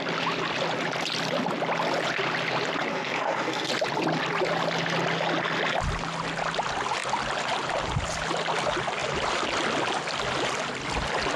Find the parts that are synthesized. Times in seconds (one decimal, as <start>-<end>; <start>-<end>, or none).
2.9-3.7